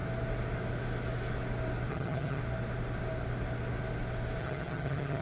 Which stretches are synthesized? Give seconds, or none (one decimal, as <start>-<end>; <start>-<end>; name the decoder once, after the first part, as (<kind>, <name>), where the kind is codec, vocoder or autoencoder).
1.9-2.4 (vocoder, HiFi-GAN); 4.4-5.2